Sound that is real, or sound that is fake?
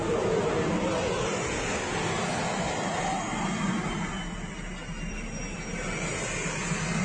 real